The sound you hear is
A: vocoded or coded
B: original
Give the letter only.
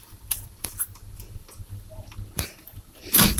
A